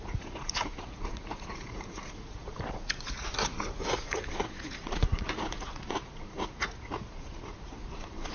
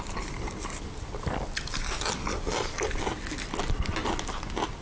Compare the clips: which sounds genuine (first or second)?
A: second